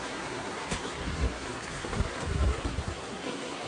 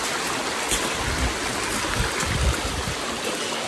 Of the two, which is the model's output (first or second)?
first